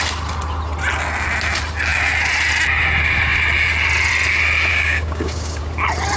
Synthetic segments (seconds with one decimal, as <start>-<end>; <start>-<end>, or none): 4.7-5.6